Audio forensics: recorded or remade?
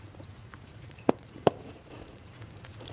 remade